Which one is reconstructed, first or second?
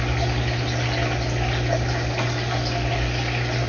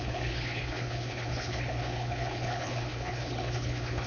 second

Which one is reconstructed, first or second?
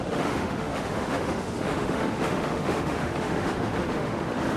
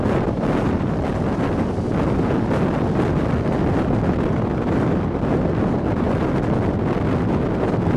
first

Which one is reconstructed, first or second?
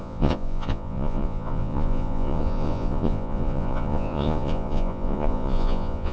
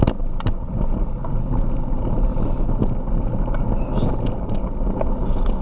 first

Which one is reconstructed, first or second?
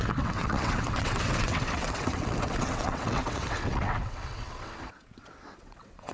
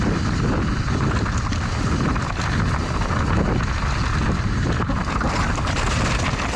first